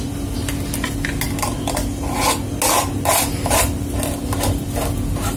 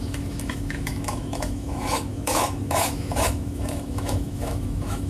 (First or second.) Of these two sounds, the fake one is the second